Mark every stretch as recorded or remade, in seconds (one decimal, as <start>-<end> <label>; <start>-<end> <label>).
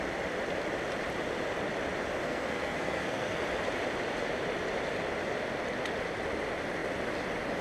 0.0-2.2 recorded; 2.2-3.4 remade; 3.4-7.6 recorded